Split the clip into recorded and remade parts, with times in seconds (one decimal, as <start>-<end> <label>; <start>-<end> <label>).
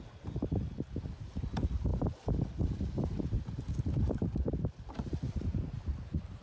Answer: 0.0-1.9 recorded; 1.9-5.7 remade; 5.7-6.4 recorded